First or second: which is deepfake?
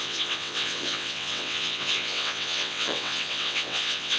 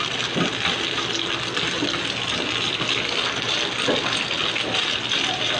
first